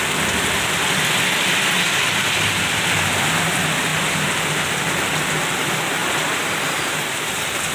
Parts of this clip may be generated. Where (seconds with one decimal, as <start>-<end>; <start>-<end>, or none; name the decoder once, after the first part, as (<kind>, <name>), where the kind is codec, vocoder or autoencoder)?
6.0-7.0 (vocoder, BigVGAN v2)